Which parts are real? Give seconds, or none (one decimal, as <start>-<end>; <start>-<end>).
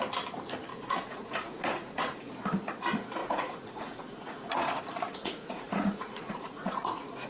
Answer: 0.0-0.7; 2.3-3.2; 4.8-5.2